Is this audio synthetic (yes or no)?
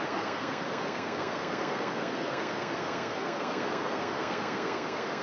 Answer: yes